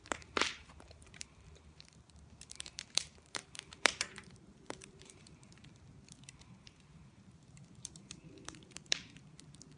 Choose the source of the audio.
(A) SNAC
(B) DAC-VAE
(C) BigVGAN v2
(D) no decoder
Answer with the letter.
C